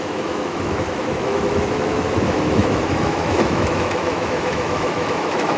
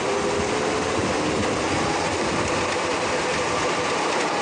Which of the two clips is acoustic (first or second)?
second